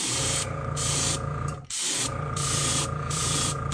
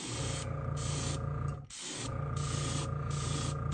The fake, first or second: first